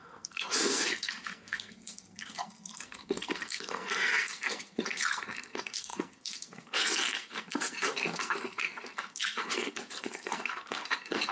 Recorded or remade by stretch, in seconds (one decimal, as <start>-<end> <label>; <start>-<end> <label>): 0.0-11.3 remade